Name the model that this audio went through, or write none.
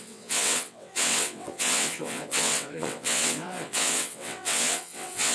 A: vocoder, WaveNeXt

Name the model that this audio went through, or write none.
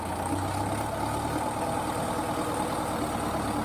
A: none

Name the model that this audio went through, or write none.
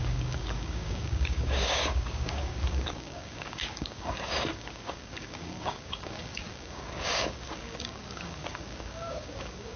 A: codec, DAC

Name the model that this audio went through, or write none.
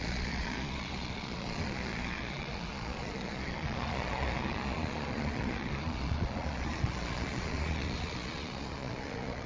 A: vocoder, Vocos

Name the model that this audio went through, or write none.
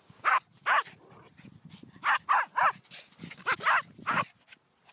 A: none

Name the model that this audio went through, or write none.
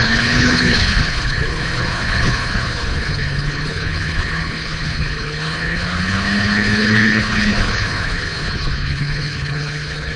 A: codec, HILCodec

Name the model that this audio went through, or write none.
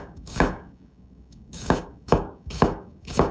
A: codec, DAC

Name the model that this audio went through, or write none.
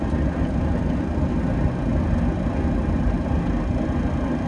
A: none